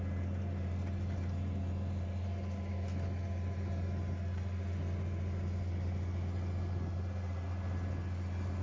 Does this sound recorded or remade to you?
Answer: recorded